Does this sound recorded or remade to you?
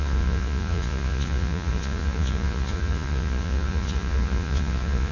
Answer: remade